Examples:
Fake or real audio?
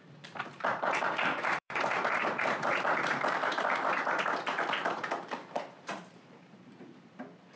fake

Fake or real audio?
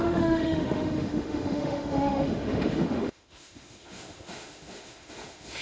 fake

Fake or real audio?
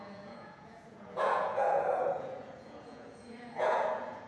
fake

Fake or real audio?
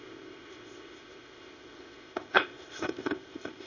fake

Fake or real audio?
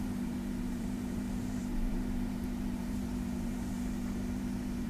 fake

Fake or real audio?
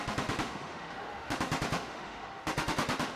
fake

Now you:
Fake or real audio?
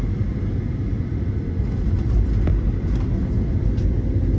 real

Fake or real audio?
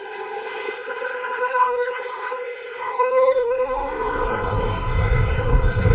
fake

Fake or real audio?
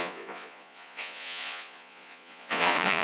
fake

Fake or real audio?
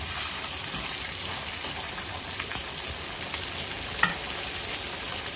real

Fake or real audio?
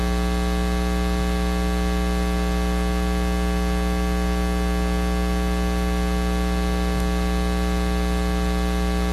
real